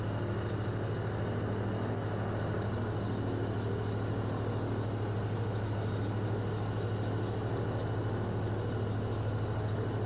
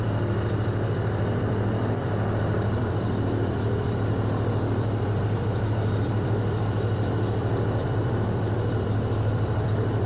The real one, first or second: first